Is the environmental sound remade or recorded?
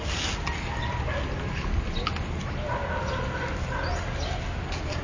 recorded